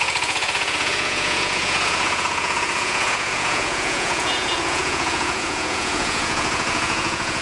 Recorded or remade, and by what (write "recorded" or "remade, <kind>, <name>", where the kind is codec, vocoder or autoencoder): remade, vocoder, Vocos